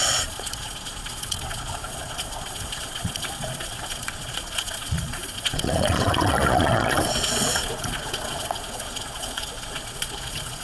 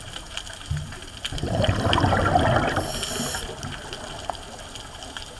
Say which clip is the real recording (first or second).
second